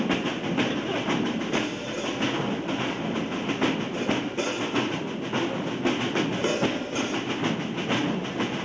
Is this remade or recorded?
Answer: recorded